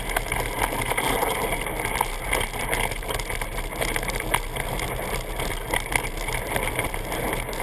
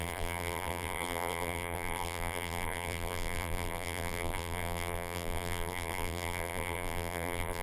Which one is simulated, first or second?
second